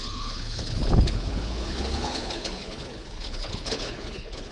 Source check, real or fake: fake